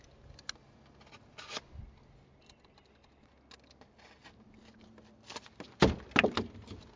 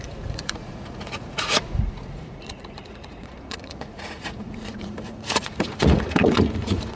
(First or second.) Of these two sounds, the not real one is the second